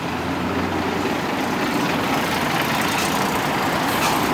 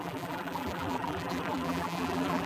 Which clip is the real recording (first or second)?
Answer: first